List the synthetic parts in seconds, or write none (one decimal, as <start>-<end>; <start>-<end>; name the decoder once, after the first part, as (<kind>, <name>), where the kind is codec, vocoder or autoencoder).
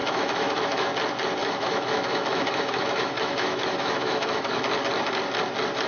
0.0-0.9 (autoencoder, DAC-VAE); 1.4-4.6